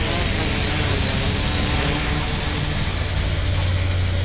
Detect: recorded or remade recorded